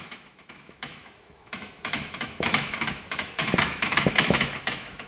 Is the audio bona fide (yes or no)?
no